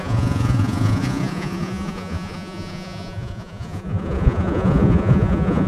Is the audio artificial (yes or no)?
yes